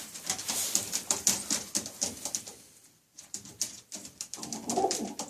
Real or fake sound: fake